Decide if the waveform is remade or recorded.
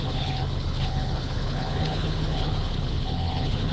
remade